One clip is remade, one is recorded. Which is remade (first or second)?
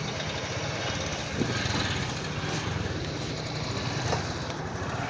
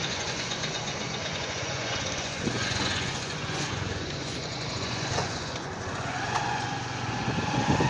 second